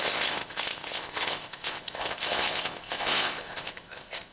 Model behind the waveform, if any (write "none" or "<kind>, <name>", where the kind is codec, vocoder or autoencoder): codec, ZipCodec